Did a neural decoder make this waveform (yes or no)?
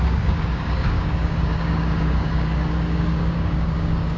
yes